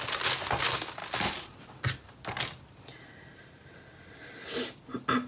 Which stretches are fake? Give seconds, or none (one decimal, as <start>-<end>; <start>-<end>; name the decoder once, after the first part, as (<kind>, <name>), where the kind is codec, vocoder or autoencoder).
none